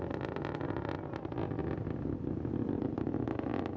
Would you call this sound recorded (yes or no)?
yes